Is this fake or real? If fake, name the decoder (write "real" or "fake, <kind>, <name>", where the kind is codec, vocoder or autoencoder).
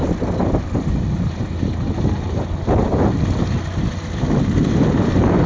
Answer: real